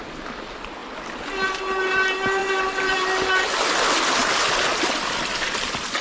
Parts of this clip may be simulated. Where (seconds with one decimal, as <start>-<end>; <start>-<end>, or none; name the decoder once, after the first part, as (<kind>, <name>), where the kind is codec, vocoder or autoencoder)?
none